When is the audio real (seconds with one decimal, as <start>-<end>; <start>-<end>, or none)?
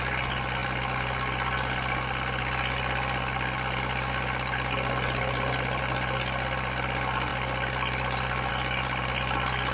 0.0-9.7